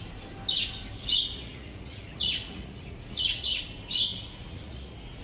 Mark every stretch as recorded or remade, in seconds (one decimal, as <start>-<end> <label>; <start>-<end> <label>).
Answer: 0.0-1.0 recorded; 1.0-3.6 remade; 3.6-4.1 recorded; 4.1-5.2 remade